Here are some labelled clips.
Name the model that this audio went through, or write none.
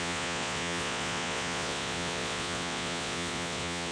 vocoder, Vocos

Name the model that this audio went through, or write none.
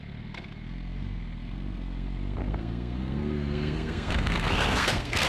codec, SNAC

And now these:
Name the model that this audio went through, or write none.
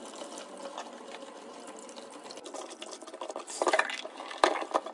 none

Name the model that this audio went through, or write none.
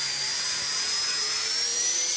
none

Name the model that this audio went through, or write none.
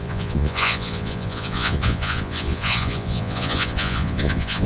vocoder, Vocos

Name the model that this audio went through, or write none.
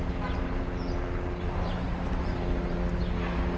none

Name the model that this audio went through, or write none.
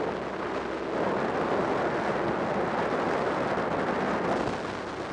none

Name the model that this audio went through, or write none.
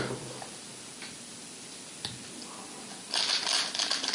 none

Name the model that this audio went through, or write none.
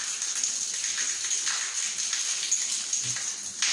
none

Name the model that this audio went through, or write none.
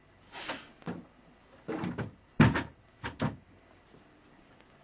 none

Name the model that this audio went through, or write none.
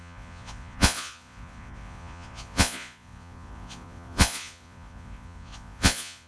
vocoder, Vocos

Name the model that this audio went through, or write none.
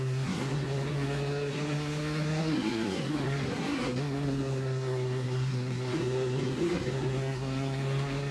codec, SNAC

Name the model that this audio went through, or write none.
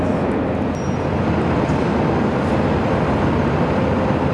none